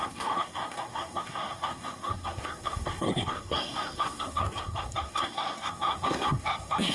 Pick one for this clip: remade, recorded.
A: remade